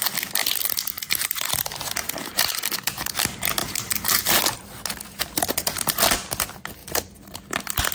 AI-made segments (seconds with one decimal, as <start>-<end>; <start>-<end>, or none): 2.0-3.2; 3.6-4.3